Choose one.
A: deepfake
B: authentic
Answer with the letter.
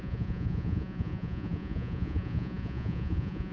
A